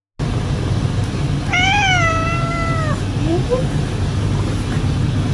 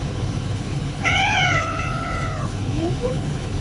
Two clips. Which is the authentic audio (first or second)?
first